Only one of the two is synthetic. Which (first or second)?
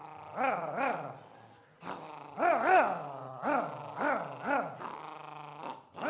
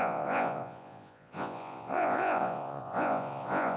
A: second